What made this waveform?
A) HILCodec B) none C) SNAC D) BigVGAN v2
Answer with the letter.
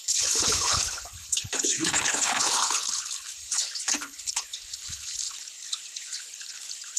A